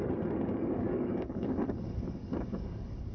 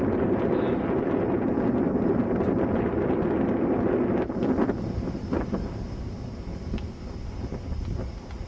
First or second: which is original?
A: second